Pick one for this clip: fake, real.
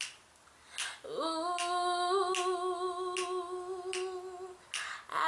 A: real